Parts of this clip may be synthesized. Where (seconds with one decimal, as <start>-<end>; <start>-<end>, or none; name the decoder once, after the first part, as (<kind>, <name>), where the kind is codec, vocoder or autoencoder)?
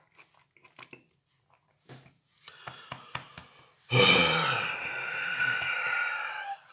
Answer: none